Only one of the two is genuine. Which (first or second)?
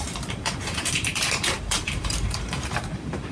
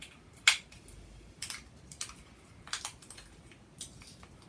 second